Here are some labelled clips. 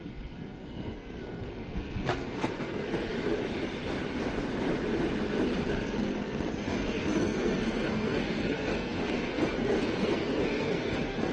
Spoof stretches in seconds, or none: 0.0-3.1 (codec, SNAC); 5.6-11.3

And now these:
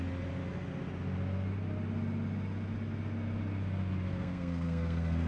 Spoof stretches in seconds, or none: 4.1-5.3 (codec, SNAC)

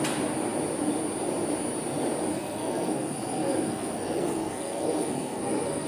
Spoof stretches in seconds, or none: 2.3-5.9 (codec, SNAC)

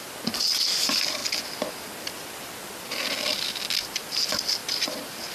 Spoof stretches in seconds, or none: none

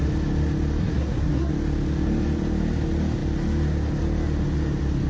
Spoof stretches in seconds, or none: 0.8-1.5 (codec, SNAC)

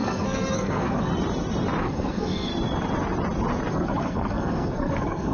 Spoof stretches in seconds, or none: 0.0-1.1 (codec, SNAC); 1.8-2.5; 3.7-5.3

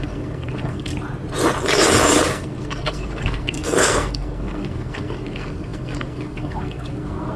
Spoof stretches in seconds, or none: 0.0-0.9 (codec, SNAC); 2.3-7.4